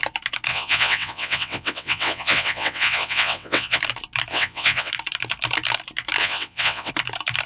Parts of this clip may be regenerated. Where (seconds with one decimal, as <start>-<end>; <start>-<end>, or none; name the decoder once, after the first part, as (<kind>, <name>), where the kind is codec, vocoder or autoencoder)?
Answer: 0.5-3.8 (vocoder, WaveNeXt); 4.3-4.9; 6.2-6.9

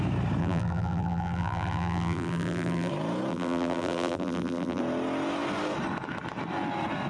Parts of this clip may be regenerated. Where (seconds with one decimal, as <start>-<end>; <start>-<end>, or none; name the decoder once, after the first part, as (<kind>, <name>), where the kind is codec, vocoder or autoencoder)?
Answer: 0.4-2.9 (vocoder, BigVGAN v2); 3.3-4.8